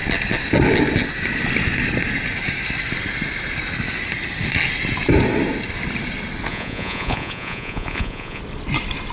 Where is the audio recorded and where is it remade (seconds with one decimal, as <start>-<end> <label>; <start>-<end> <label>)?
0.0-6.5 recorded; 6.5-8.4 remade; 8.4-9.1 recorded